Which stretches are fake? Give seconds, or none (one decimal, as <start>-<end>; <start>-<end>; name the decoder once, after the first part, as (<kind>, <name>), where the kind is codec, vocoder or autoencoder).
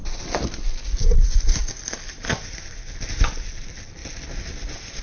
none